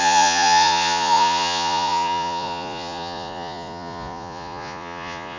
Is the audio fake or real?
fake